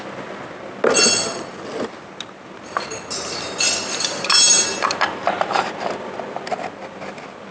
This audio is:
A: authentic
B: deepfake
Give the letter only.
A